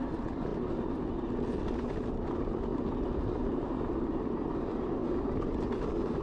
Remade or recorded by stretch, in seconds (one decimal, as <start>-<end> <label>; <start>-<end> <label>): 0.0-6.2 recorded